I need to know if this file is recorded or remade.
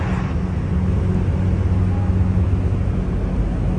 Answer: recorded